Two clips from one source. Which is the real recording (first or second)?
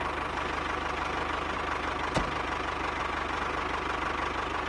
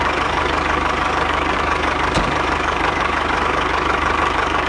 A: first